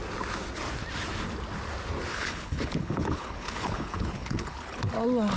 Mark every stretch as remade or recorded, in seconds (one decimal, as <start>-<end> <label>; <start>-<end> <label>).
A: 0.0-2.1 recorded; 2.1-4.9 remade; 4.9-5.4 recorded